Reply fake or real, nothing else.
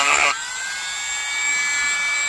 real